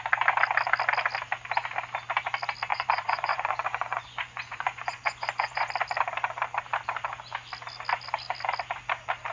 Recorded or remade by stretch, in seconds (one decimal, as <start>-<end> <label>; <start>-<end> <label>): 0.0-2.7 recorded; 2.7-5.7 remade; 5.7-9.3 recorded